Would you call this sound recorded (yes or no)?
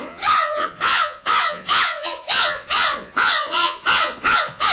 no